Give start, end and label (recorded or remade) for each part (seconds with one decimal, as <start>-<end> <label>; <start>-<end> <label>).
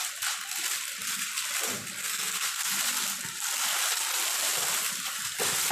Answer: 0.0-2.0 recorded; 2.0-2.6 remade; 2.6-5.7 recorded